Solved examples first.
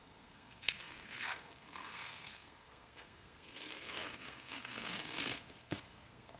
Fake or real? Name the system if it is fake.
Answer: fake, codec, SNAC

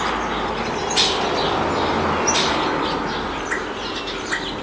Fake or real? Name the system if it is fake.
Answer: real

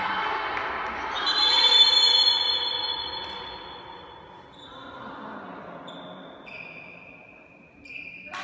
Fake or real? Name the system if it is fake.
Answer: real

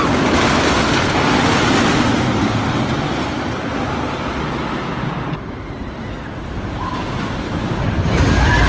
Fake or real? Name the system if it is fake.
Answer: real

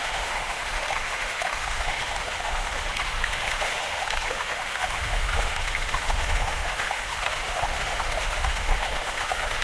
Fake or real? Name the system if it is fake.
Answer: fake, autoencoder, DAC-VAE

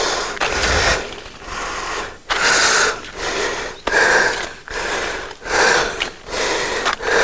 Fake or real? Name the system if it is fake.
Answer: real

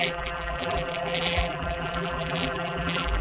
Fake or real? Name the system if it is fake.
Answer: fake, vocoder, BigVGAN v2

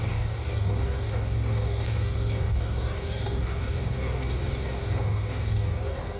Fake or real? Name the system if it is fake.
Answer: fake, codec, DAC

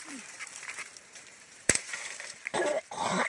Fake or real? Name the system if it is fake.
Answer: fake, vocoder, BigVGAN v2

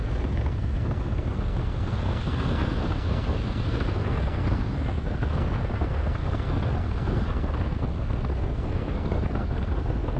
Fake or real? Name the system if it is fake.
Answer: fake, codec, SNAC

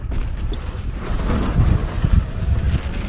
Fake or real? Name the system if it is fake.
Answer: real